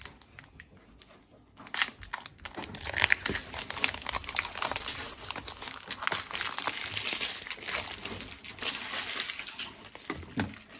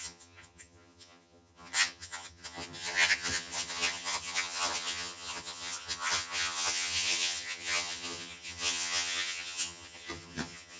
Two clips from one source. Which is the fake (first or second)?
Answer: second